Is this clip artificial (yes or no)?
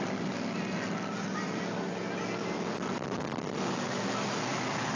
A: no